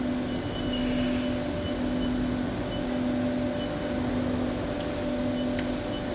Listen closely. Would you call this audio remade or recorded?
recorded